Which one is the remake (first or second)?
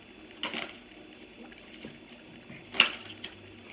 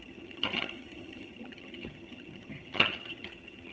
second